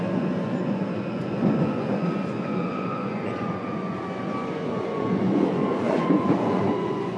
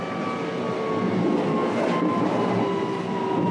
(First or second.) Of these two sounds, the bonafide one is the second